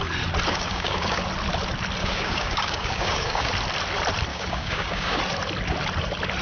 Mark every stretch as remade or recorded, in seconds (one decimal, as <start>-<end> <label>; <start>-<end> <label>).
0.0-0.5 recorded; 0.5-1.2 remade; 1.2-2.0 recorded; 2.0-3.5 remade; 3.5-4.3 recorded; 4.3-5.2 remade; 5.2-6.4 recorded